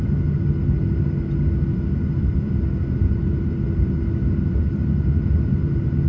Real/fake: real